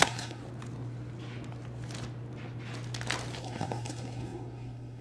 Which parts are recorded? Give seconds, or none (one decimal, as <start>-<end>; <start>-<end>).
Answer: 0.4-3.4